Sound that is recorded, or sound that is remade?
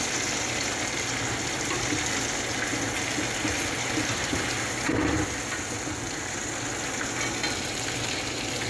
recorded